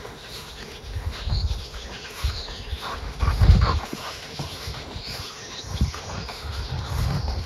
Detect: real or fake fake